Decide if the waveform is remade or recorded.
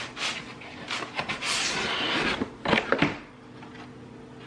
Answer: recorded